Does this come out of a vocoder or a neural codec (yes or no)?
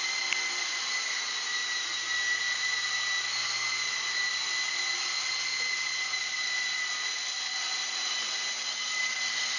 no